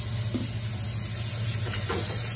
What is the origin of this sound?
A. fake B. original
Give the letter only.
B